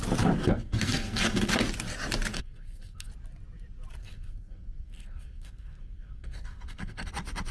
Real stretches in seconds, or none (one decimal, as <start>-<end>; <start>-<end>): 0.0-0.4; 1.5-2.3; 3.1-4.0; 7.1-7.5